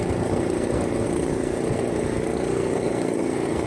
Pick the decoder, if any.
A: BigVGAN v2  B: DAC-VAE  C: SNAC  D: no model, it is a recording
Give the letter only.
C